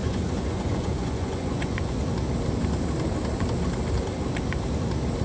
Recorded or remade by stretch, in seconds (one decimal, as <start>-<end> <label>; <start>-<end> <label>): 0.0-2.0 remade; 2.0-5.2 recorded